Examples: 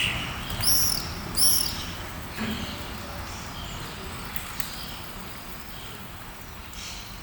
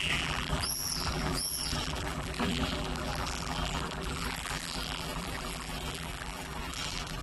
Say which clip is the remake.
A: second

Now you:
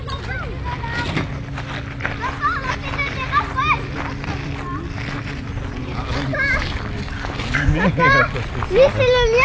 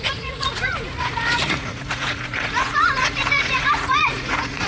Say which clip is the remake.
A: second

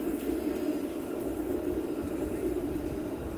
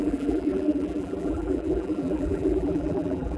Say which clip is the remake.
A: second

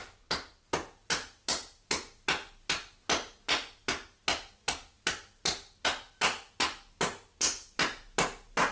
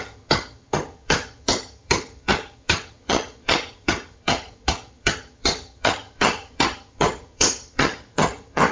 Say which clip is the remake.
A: second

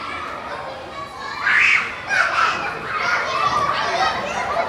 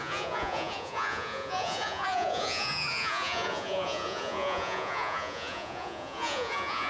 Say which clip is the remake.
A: second